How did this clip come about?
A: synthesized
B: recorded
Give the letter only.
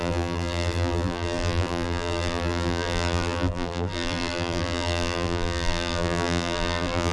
A